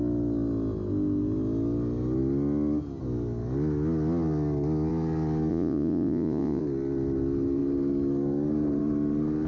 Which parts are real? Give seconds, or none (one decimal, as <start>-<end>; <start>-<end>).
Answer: 0.0-5.5; 6.6-9.5

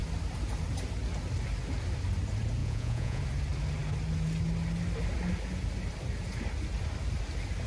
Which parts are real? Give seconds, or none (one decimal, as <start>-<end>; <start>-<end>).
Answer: 0.0-2.6; 3.2-7.7

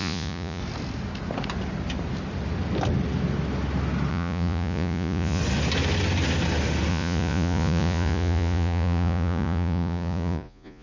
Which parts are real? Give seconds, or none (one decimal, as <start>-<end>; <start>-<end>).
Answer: 0.6-4.1; 5.4-6.9